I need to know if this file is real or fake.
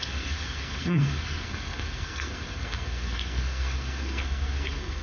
fake